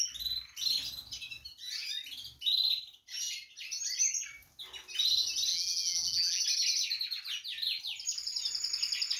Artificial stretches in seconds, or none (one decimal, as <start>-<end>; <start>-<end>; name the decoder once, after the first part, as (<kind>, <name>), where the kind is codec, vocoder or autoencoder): 5.5-6.4 (vocoder, BigVGAN v2)